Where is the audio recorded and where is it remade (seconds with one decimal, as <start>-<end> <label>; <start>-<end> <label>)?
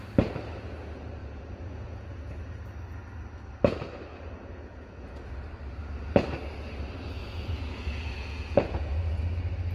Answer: 0.0-1.2 recorded; 1.2-2.5 remade; 2.5-4.1 recorded; 4.1-5.2 remade; 5.2-7.2 recorded; 7.2-9.2 remade; 9.2-9.7 recorded